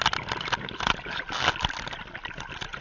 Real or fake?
real